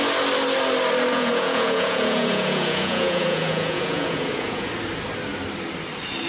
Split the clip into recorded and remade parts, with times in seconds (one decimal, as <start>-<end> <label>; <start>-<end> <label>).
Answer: 0.0-1.1 recorded; 1.1-4.7 remade; 4.7-6.3 recorded